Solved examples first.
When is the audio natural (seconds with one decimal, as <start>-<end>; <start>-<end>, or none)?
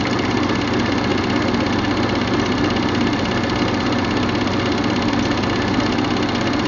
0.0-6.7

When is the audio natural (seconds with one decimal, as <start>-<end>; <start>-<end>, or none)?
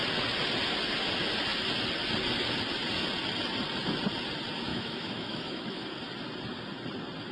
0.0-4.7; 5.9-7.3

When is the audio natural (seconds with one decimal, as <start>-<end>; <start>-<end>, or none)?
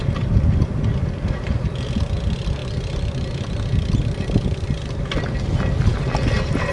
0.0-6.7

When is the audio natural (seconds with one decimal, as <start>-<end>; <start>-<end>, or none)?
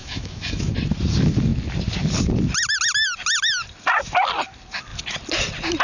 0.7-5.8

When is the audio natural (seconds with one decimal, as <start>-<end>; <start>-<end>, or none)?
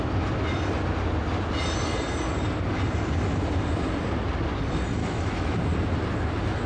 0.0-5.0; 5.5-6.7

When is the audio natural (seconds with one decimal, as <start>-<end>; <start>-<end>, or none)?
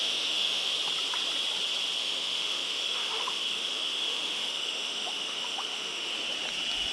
0.7-2.0; 6.1-6.9